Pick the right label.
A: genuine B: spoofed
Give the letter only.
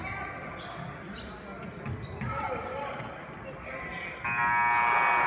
A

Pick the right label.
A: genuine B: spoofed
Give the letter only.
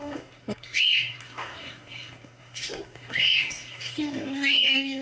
B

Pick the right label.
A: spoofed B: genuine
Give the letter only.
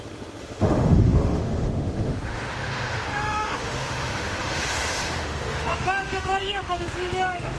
A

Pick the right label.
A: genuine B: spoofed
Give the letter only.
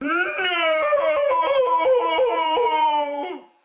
B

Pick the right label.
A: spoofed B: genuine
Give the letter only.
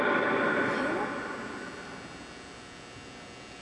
B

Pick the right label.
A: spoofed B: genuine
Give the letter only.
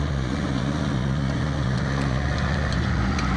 A